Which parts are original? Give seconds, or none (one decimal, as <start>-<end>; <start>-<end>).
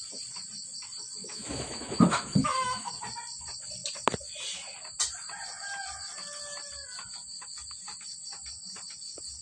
0.0-1.2; 2.9-9.4